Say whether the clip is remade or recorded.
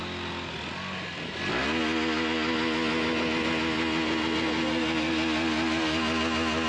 recorded